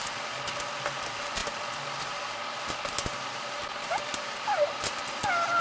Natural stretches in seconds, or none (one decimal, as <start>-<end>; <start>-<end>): 0.0-5.6